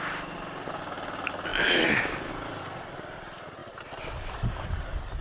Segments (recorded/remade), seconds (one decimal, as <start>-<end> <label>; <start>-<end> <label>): 0.0-5.2 recorded